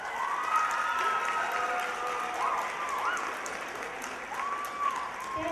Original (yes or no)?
yes